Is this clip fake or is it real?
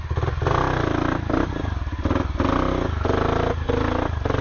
real